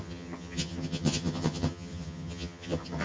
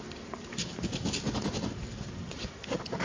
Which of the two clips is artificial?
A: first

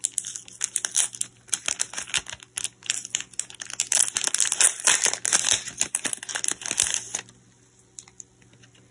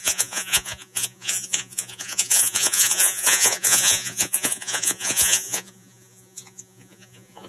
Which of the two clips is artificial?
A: second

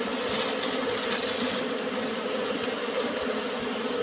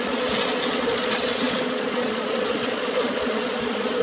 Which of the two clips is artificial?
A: second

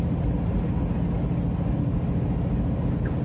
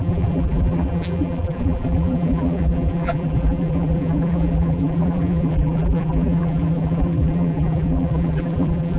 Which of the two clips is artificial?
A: second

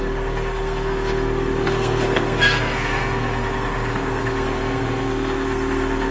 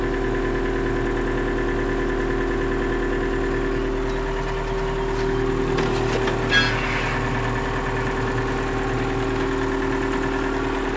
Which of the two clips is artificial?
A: first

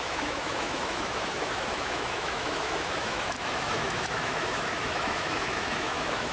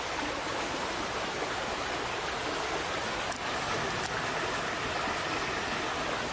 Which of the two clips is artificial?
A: first